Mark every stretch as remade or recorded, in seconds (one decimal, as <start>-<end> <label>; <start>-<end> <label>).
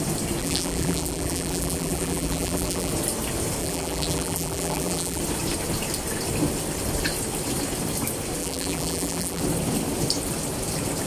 0.0-0.4 recorded; 0.4-2.9 remade; 2.9-3.6 recorded; 3.6-5.2 remade; 5.2-8.4 recorded; 8.4-9.4 remade; 9.4-11.1 recorded